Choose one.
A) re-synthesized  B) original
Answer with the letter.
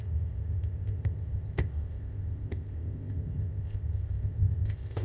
A